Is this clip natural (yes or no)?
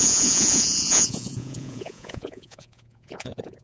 no